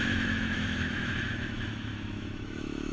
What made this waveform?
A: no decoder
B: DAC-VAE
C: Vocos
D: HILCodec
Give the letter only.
B